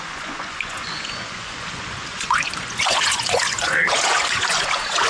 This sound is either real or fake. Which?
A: fake